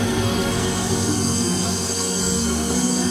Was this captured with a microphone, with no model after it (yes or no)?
no